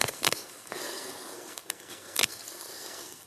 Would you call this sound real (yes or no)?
no